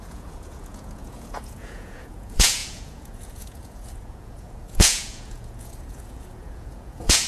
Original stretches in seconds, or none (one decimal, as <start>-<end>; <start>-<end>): none